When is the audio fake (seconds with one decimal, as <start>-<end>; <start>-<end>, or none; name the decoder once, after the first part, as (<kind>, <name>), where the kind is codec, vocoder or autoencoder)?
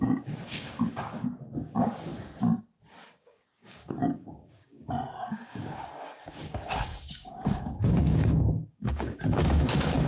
0.0-2.1 (codec, DAC); 3.1-10.1